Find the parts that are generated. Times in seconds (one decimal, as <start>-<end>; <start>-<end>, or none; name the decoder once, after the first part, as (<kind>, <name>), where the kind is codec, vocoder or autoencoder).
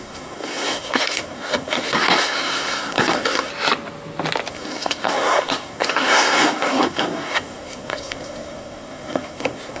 0.0-3.5 (codec, SNAC); 4.5-9.8